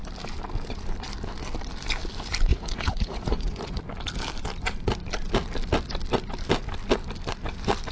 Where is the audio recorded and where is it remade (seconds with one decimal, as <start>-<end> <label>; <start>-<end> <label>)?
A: 0.0-2.5 recorded; 2.5-3.8 remade; 3.8-7.9 recorded